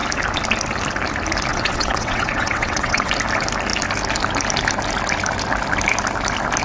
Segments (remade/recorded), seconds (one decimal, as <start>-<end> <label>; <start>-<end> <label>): 0.0-1.5 recorded; 1.5-3.1 remade; 3.1-6.6 recorded